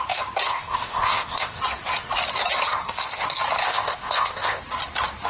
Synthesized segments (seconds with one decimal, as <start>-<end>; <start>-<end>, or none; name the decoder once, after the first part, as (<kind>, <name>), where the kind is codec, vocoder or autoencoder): 0.5-1.6 (codec, ZipCodec); 2.7-3.2; 3.6-4.6